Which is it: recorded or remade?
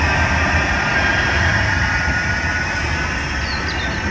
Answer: recorded